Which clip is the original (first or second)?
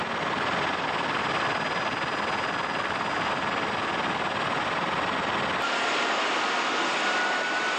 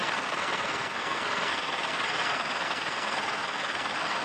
first